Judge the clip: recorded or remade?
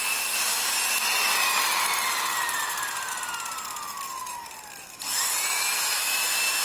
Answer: recorded